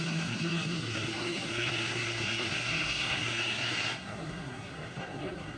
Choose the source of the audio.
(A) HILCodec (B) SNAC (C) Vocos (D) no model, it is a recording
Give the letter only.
B